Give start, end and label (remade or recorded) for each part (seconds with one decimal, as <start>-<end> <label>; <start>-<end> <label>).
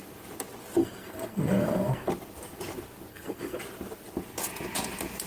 0.0-0.8 recorded; 0.8-2.1 remade; 2.1-3.1 recorded; 3.1-3.6 remade; 3.6-5.3 recorded